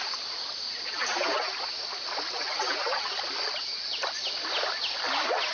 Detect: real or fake real